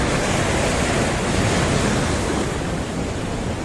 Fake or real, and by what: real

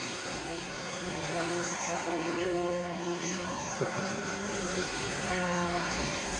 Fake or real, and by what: fake, codec, SNAC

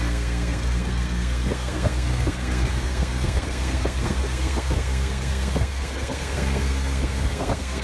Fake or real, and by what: fake, codec, SNAC